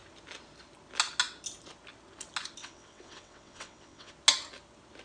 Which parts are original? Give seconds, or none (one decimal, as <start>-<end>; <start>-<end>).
0.0-2.6; 4.1-5.0